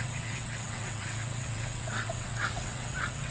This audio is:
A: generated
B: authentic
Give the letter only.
A